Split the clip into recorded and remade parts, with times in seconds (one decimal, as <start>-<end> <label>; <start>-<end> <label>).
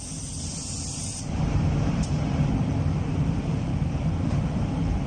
0.0-3.7 remade; 3.7-4.2 recorded; 4.2-5.1 remade